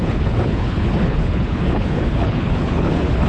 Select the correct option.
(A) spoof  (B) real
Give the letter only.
A